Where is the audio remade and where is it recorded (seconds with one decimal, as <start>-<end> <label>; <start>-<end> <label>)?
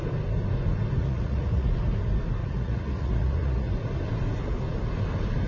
0.0-1.0 recorded; 1.0-1.7 remade; 1.7-2.4 recorded; 2.4-3.7 remade; 3.7-5.5 recorded